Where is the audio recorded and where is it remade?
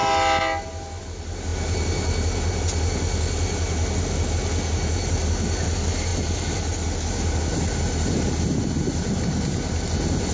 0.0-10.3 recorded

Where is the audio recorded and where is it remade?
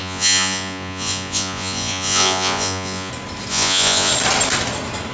0.0-3.1 remade; 3.1-3.5 recorded; 3.5-4.1 remade; 4.1-5.1 recorded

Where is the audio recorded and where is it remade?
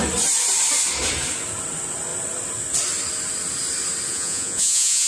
0.0-4.1 recorded; 4.1-5.1 remade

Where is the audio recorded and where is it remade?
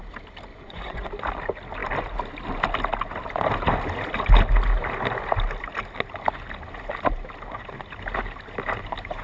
0.0-0.5 recorded; 0.5-1.1 remade; 1.1-9.2 recorded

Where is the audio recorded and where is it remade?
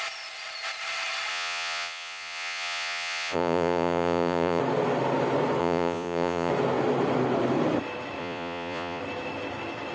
0.0-1.3 recorded; 1.3-4.6 remade; 4.6-5.6 recorded; 5.6-6.5 remade; 6.5-8.2 recorded; 8.2-9.0 remade; 9.0-9.9 recorded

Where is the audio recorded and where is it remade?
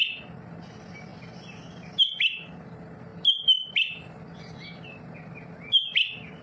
0.0-6.4 recorded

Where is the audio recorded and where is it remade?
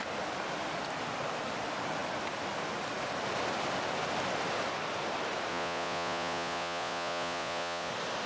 0.0-5.5 recorded; 5.5-7.9 remade; 7.9-8.3 recorded